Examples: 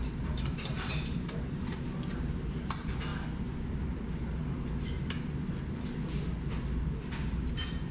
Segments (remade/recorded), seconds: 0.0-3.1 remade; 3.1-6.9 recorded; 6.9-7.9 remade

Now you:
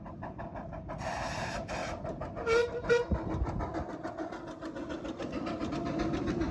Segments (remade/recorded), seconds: 0.0-1.8 recorded; 1.8-5.7 remade; 5.7-6.5 recorded